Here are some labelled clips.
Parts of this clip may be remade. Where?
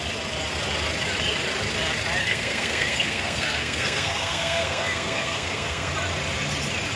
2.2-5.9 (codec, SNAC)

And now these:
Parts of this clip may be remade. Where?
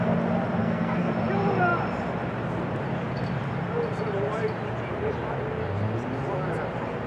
0.6-1.1 (codec, SNAC)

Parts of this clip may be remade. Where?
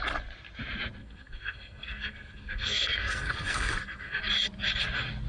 1.0-4.2 (codec, SNAC)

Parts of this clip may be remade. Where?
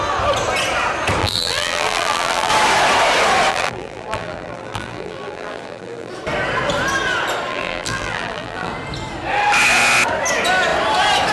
1.2-2.5 (vocoder, BigVGAN v2); 3.5-6.1; 7.5-8.7